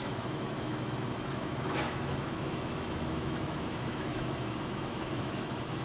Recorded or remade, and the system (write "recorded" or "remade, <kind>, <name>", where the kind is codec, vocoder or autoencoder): remade, autoencoder, DAC-VAE